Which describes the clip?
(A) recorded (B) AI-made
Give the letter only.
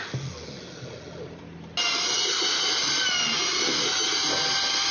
A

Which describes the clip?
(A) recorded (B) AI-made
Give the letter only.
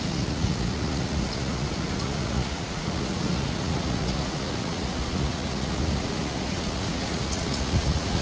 B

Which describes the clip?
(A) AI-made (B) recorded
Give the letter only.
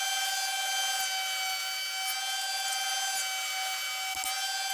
B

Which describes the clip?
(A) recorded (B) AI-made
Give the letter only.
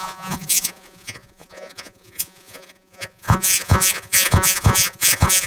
B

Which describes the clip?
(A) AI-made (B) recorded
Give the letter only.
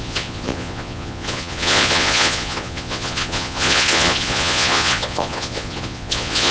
A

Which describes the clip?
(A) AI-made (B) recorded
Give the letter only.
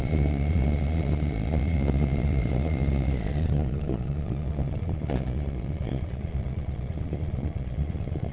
A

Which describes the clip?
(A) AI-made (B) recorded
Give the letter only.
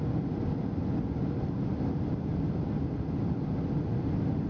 B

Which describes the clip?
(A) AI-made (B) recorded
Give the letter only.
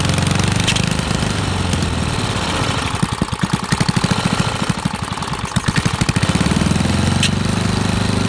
B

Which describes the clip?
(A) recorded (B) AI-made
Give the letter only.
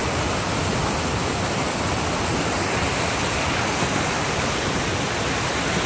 A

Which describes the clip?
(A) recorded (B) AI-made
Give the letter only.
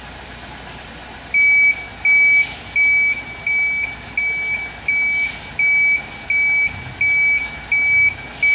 A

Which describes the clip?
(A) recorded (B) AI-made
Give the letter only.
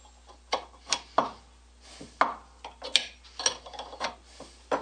A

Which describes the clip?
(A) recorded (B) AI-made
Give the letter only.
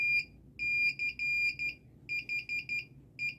A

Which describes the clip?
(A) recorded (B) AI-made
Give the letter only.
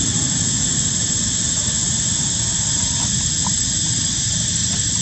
A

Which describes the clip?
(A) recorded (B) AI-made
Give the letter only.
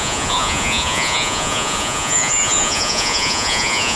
B